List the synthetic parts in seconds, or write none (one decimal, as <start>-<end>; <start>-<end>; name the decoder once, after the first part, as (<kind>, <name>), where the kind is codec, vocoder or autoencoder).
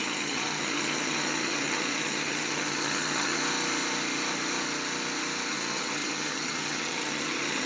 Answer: 0.0-3.4 (vocoder, HiFi-GAN); 5.5-7.7